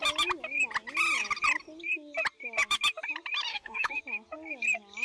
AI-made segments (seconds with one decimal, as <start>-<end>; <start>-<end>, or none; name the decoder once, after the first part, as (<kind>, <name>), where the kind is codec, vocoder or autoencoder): 3.5-4.0 (autoencoder, DAC-VAE)